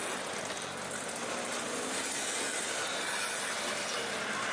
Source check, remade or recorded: recorded